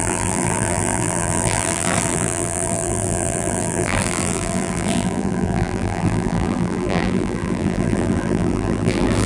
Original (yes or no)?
no